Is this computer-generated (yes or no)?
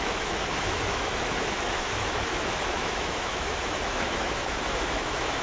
yes